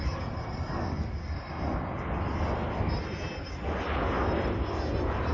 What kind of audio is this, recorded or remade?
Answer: recorded